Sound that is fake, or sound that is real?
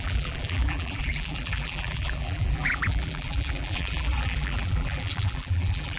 fake